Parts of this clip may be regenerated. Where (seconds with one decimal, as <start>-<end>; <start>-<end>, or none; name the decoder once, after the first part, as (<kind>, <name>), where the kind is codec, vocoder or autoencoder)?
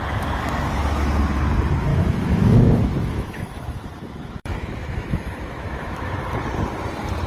1.9-6.3 (autoencoder, DAC-VAE)